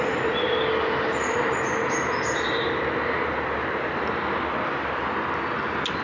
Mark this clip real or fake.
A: real